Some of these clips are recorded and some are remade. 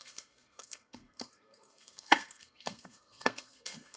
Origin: remade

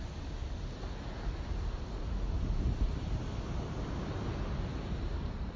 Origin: recorded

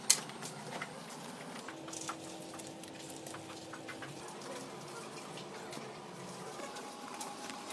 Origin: recorded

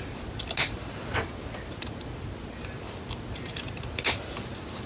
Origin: recorded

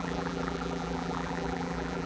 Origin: remade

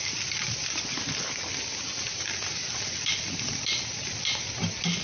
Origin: recorded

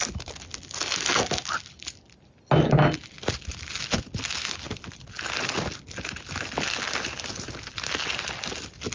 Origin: recorded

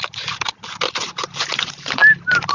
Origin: recorded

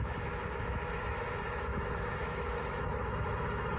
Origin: remade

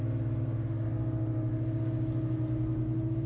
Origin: recorded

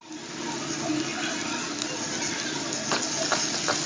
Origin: recorded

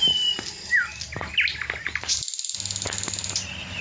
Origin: recorded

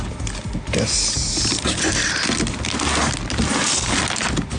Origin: recorded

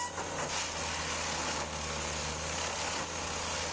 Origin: recorded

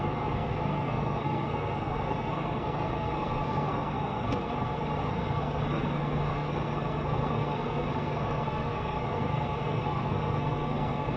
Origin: remade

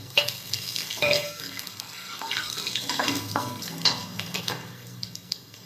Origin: remade